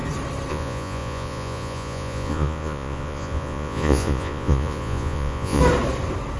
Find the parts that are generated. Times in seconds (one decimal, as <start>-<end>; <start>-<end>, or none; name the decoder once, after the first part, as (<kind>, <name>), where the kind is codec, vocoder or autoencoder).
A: 0.5-5.6 (vocoder, Vocos)